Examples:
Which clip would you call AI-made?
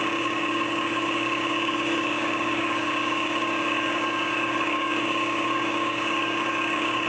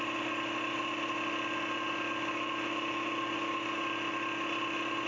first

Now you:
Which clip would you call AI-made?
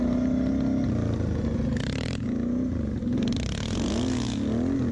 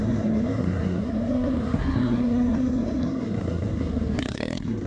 second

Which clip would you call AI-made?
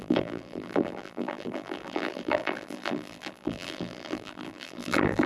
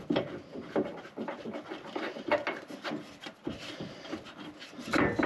first